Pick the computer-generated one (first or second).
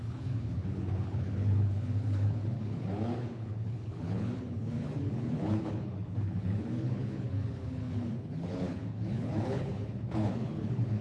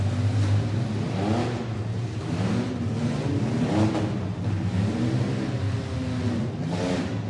first